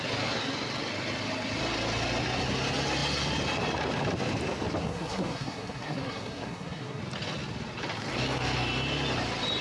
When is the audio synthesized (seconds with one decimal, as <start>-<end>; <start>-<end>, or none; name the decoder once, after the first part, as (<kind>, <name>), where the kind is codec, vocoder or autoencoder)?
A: 4.8-7.0 (codec, SNAC)